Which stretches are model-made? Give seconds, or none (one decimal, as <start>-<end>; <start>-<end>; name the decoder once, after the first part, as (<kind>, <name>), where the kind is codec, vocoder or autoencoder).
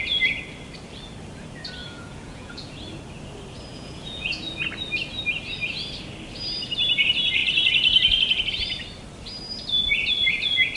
1.8-2.7 (vocoder, Vocos); 3.7-4.6